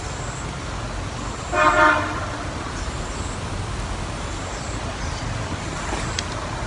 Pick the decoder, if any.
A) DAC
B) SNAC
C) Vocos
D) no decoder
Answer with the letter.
D